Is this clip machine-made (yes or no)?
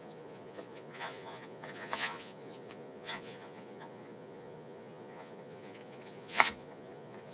yes